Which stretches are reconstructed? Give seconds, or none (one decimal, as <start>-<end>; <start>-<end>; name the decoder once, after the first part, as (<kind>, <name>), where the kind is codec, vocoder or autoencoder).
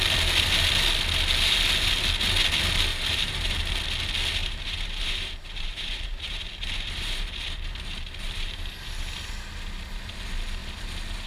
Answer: 2.9-3.8 (vocoder, BigVGAN v2); 4.4-8.6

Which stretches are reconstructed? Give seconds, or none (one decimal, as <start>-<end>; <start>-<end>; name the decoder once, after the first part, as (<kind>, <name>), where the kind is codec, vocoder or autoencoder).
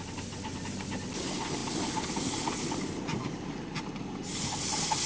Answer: none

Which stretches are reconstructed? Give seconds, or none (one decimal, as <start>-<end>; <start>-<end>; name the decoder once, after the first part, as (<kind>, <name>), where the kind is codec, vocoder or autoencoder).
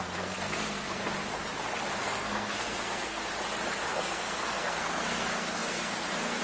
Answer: 0.0-1.0 (codec, SNAC); 2.0-3.2; 3.9-6.4